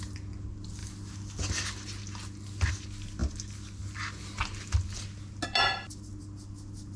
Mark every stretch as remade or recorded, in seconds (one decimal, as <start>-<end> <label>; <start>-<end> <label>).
0.0-7.0 recorded